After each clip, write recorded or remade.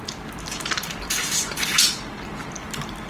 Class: recorded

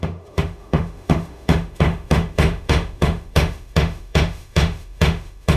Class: remade